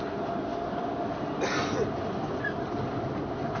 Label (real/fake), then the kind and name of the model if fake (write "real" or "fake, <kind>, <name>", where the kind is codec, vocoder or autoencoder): real